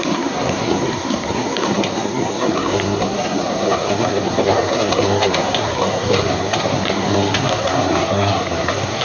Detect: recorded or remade remade